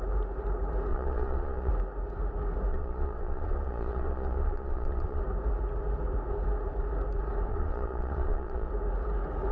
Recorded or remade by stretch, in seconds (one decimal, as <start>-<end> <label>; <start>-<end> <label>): 0.0-0.9 recorded; 0.9-1.7 remade; 1.7-2.7 recorded; 2.7-5.2 remade; 5.2-7.5 recorded; 7.5-8.7 remade; 8.7-9.5 recorded